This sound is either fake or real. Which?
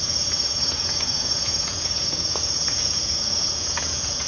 fake